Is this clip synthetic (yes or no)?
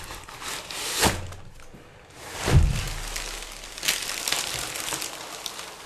no